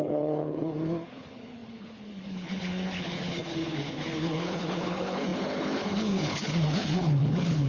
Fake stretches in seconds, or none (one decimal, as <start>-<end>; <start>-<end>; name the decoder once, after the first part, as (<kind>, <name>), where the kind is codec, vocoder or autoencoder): 0.0-7.7 (codec, HILCodec)